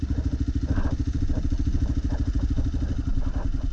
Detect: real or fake real